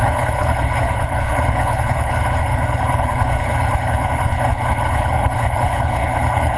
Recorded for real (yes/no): no